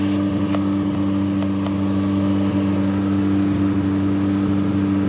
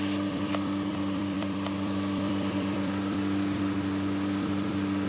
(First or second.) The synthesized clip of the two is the second